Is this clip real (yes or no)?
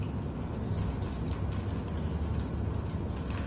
yes